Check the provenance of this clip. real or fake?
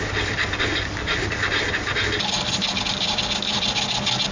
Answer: real